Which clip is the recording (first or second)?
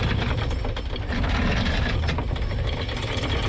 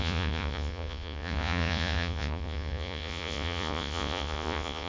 first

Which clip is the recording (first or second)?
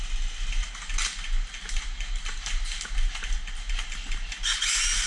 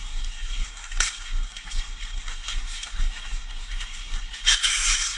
first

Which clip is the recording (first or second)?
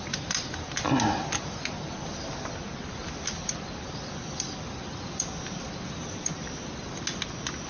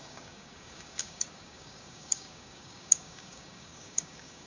first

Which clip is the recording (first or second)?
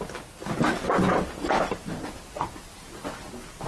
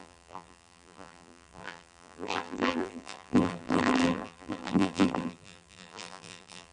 first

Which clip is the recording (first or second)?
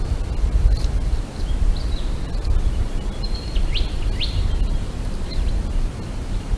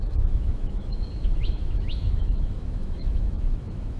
first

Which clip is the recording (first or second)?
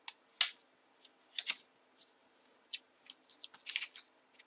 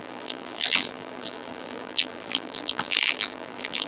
first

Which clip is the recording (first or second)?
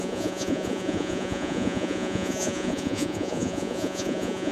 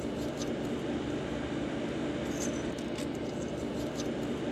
second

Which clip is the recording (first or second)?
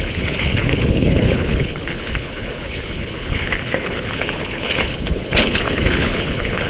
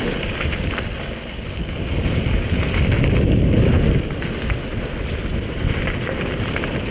second